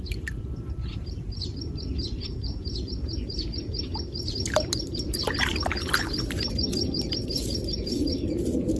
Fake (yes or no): yes